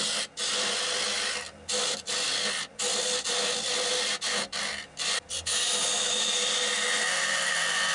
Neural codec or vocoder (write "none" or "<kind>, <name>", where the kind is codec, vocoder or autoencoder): none